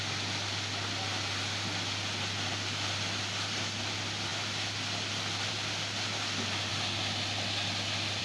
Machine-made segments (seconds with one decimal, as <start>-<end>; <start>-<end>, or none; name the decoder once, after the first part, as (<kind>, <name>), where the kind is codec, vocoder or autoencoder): none